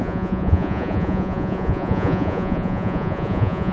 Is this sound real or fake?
fake